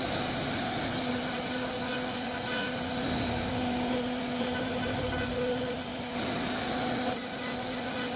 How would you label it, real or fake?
real